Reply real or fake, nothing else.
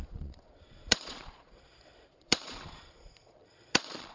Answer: fake